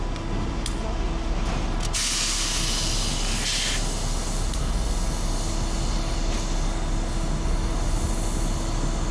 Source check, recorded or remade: recorded